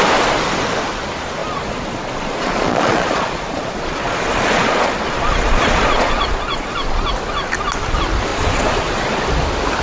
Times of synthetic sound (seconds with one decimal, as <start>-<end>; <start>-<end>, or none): 1.4-6.7; 8.3-9.2